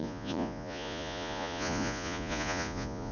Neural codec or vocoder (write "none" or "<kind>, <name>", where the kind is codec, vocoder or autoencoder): vocoder, Vocos